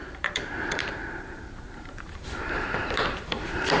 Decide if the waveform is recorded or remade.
remade